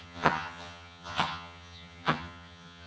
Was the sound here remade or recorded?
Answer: remade